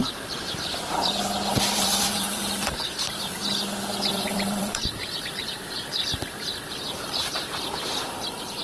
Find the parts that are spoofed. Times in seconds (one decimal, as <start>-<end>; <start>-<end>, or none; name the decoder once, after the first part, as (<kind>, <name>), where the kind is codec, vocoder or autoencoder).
1.5-3.4 (vocoder, BigVGAN v2); 4.1-8.6